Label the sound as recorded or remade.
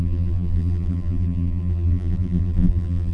remade